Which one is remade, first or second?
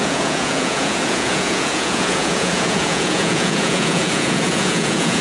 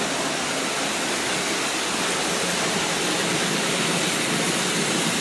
first